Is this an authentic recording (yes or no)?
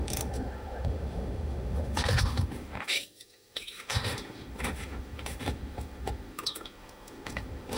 no